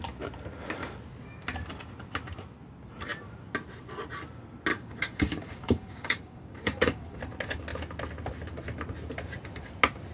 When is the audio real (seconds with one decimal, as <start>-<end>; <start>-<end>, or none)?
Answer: 0.0-4.7; 7.2-10.1